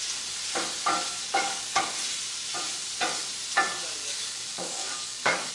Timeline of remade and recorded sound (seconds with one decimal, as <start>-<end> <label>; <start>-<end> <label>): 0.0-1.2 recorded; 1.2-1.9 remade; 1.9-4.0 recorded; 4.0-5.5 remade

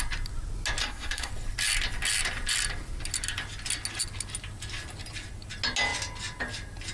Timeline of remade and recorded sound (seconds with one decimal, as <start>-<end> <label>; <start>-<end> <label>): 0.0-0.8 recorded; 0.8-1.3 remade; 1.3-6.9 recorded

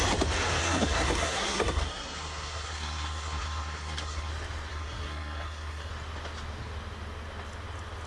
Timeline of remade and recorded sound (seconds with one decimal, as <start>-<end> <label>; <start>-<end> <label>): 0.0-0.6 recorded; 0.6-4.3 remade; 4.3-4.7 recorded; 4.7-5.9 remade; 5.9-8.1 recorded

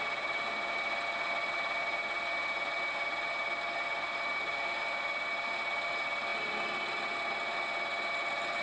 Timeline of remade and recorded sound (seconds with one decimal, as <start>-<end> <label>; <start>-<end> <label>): 0.0-8.6 recorded

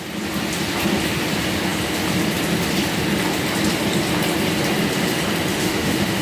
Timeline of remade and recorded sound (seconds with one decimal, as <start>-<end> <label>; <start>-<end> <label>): 0.0-5.5 recorded; 5.5-6.2 remade